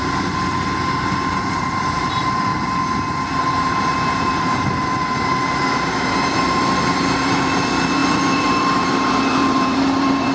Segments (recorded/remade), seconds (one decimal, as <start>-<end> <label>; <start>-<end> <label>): 0.0-1.3 recorded; 1.3-2.5 remade; 2.5-3.3 recorded; 3.3-10.3 remade